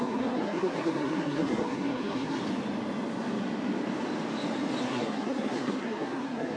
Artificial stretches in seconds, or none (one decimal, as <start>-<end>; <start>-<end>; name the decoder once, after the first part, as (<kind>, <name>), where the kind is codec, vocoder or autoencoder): 0.0-2.4 (codec, SNAC); 4.8-6.6